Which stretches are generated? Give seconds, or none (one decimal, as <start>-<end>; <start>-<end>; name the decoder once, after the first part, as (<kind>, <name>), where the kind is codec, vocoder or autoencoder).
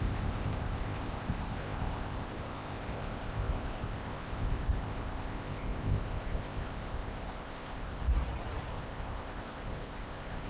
0.0-8.1 (codec, ZipCodec); 8.7-10.5